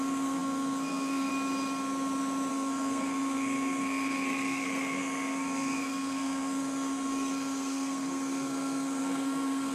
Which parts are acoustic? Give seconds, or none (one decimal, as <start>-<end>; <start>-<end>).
1.3-2.5